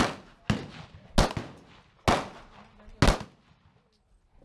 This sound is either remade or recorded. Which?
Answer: recorded